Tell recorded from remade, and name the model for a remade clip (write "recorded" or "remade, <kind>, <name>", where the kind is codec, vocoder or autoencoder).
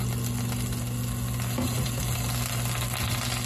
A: recorded